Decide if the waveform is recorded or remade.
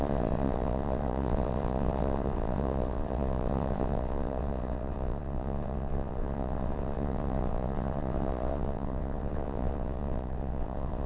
remade